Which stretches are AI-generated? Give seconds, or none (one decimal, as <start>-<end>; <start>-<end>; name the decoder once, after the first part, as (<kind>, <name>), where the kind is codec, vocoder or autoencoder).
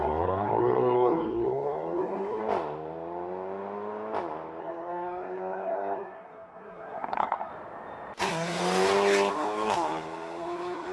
0.0-2.4 (codec, SNAC); 4.6-7.5; 8.2-8.6; 9.3-10.9